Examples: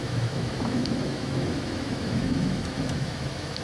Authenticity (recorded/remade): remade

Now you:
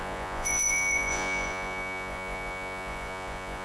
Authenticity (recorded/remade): remade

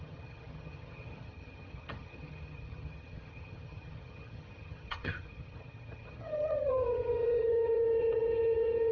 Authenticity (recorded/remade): remade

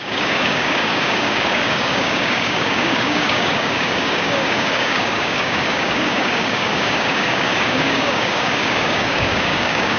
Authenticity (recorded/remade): remade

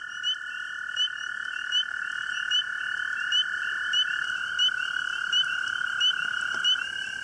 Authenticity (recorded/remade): recorded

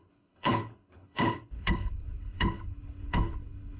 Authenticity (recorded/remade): remade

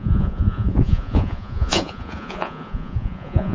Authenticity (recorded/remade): remade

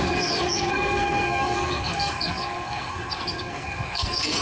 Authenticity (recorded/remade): remade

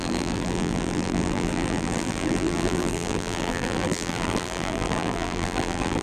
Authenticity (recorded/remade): remade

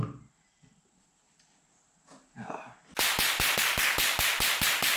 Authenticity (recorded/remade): recorded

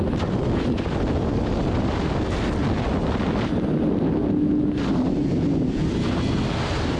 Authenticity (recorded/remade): recorded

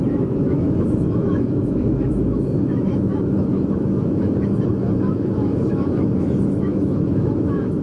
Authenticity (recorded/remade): remade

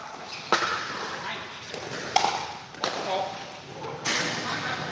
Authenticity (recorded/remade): recorded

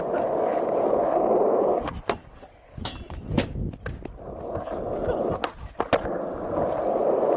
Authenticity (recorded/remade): recorded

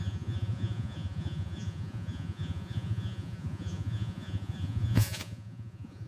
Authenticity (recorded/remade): remade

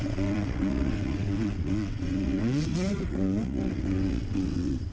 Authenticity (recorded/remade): remade